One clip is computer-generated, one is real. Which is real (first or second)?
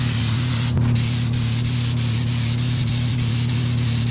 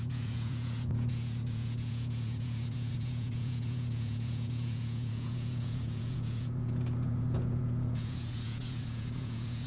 first